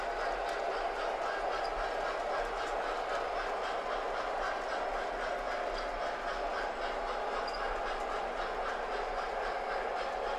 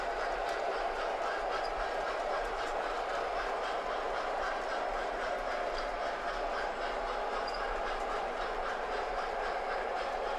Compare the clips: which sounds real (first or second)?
first